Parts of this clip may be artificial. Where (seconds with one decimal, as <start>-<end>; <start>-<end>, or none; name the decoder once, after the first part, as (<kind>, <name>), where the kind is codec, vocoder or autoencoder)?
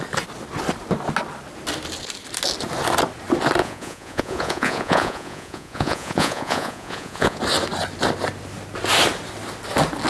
3.6-7.4 (vocoder, Vocos)